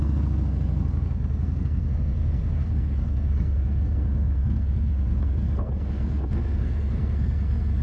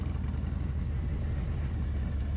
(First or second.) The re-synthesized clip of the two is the first